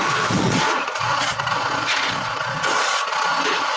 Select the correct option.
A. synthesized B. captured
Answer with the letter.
A